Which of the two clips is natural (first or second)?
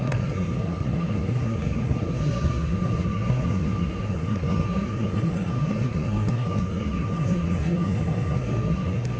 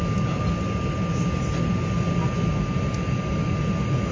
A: second